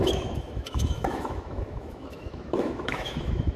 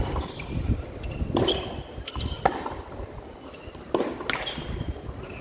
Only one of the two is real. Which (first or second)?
second